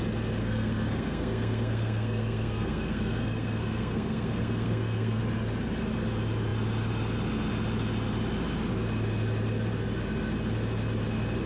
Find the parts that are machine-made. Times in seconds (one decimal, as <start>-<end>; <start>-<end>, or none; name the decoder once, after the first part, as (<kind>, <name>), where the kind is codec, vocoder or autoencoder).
0.4-5.2 (codec, SNAC)